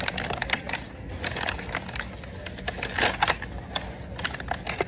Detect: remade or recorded recorded